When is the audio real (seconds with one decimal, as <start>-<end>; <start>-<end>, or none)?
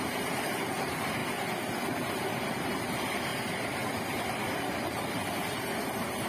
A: 1.2-2.1